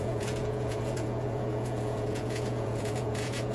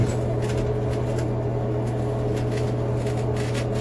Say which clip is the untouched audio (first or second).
second